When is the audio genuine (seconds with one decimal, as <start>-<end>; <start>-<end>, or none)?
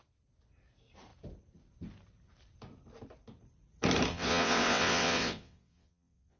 0.0-4.1